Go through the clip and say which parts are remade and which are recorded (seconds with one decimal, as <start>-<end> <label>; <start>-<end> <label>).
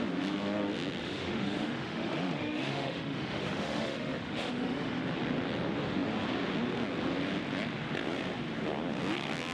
0.0-1.0 recorded; 1.0-5.0 remade; 5.0-9.5 recorded